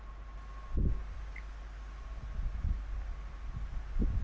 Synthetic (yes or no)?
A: no